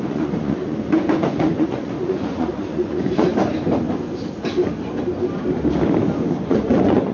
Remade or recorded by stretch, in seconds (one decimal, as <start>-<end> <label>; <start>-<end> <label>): 0.0-3.3 remade; 3.3-6.3 recorded; 6.3-7.1 remade